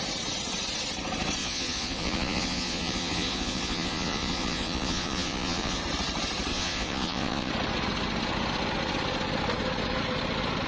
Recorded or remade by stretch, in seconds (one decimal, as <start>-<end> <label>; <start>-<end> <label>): 0.0-1.4 recorded; 1.4-5.8 remade; 5.8-6.5 recorded; 6.5-7.5 remade; 7.5-10.7 recorded